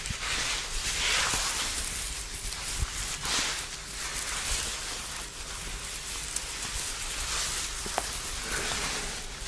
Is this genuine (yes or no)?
yes